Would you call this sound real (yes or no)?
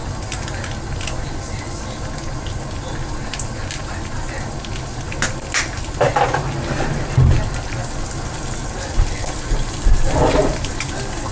yes